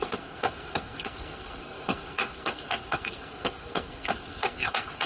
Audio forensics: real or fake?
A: fake